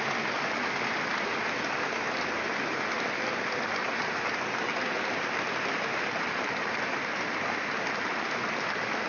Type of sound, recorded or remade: recorded